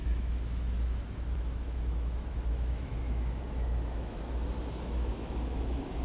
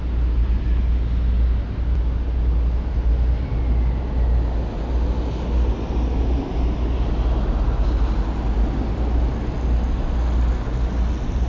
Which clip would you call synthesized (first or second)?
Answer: first